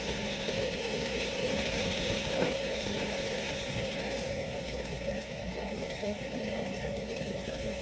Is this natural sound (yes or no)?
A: no